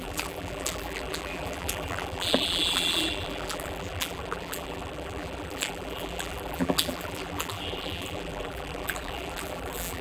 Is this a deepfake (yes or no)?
yes